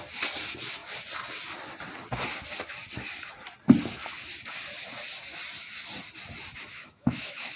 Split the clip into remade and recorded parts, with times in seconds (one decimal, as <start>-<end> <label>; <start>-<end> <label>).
0.0-6.7 recorded; 6.7-7.6 remade